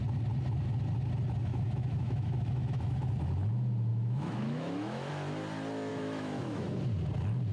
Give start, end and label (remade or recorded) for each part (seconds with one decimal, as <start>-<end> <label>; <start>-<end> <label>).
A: 0.0-1.5 recorded; 1.5-3.1 remade; 3.1-3.9 recorded; 3.9-5.1 remade; 5.1-5.9 recorded; 5.9-6.8 remade; 6.8-7.5 recorded

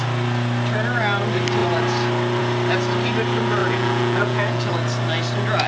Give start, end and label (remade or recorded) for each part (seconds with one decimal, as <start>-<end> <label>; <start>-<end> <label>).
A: 0.0-3.6 recorded; 3.6-4.7 remade; 4.7-5.7 recorded

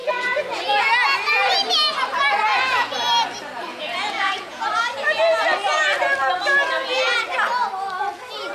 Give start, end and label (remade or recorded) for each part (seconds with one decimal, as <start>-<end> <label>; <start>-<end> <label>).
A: 0.0-0.8 remade; 0.8-2.5 recorded; 2.5-3.0 remade; 3.0-3.7 recorded; 3.7-4.6 remade; 4.6-8.5 recorded

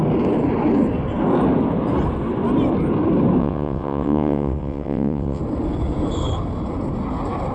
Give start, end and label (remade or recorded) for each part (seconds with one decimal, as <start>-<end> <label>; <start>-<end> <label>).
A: 0.0-3.4 recorded; 3.4-5.4 remade; 5.4-7.5 recorded

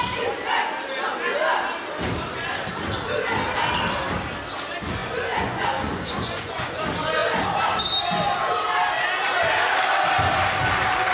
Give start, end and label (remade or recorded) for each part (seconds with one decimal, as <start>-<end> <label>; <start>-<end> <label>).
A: 0.0-5.0 recorded; 5.0-6.8 remade; 6.8-11.1 recorded